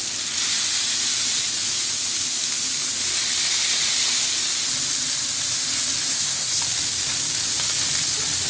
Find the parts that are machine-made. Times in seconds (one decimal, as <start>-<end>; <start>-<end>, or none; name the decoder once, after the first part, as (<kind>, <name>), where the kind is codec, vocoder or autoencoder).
6.1-6.6 (codec, SNAC)